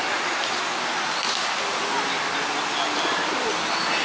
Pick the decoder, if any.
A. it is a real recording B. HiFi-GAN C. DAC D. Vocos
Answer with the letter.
A